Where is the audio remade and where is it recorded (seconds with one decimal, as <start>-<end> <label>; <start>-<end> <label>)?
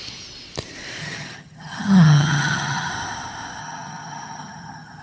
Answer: 0.0-1.0 recorded; 1.0-2.9 remade; 2.9-3.6 recorded; 3.6-5.0 remade